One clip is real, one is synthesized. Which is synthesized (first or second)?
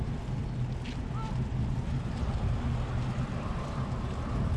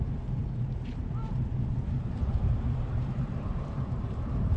second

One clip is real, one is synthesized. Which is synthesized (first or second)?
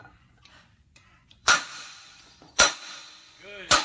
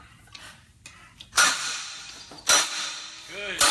first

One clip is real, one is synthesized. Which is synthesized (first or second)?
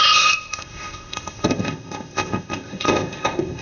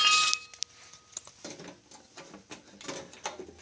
first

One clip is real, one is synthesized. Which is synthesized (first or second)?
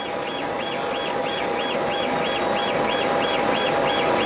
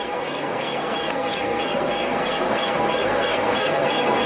second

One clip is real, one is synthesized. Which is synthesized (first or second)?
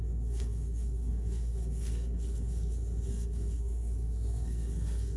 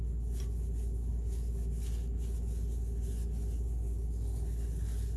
first